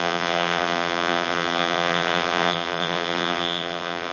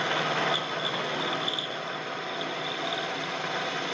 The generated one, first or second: first